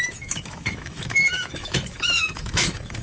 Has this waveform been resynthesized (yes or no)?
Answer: yes